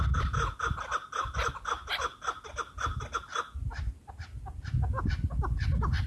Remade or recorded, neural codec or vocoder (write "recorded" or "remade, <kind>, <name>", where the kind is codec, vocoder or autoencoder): recorded